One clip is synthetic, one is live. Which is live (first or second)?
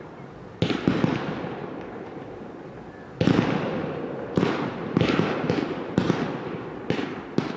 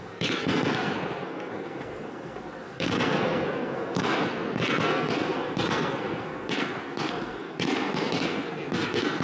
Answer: first